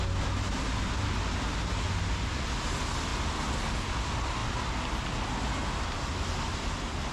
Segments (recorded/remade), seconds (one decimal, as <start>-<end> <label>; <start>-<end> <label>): 0.0-7.1 recorded

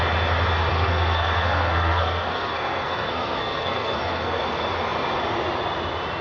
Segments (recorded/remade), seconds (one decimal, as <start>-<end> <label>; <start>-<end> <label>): 0.0-0.7 recorded; 0.7-4.4 remade; 4.4-6.2 recorded

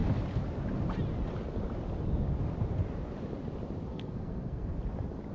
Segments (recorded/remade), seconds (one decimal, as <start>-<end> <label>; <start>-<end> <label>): 0.0-3.9 recorded; 3.9-4.7 remade; 4.7-5.3 recorded

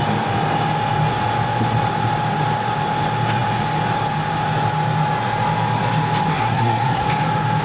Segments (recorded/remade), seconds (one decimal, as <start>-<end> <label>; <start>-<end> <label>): 0.0-6.3 recorded; 6.3-7.0 remade; 7.0-7.6 recorded

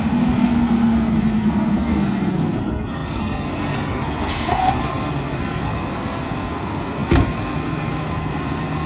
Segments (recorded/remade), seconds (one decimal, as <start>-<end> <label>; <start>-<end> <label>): 0.0-8.9 remade

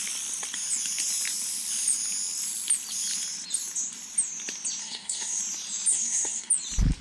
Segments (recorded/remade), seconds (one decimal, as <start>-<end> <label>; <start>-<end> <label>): 0.0-4.8 recorded; 4.8-5.4 remade; 5.4-5.9 recorded; 5.9-6.5 remade; 6.5-7.0 recorded

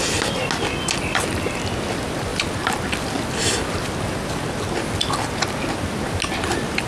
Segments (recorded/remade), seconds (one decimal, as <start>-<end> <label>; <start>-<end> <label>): 0.0-6.9 recorded

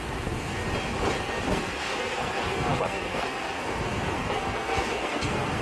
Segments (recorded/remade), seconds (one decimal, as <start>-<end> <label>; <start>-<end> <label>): 0.0-0.6 remade; 0.6-1.2 recorded; 1.2-5.6 remade